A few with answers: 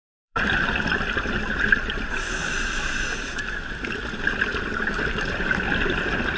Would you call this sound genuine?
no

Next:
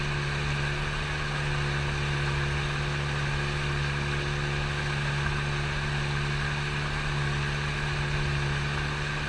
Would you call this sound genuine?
yes